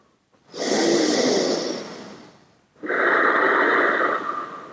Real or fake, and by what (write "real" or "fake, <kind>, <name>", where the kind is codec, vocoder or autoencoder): real